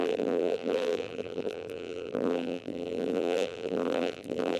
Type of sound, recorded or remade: remade